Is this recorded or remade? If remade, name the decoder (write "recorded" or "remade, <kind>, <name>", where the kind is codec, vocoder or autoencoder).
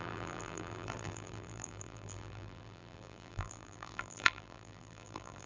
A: remade, vocoder, BigVGAN v2